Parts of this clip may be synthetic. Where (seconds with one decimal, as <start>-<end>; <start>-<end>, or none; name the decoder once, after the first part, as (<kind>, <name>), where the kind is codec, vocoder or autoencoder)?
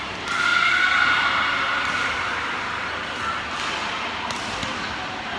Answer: none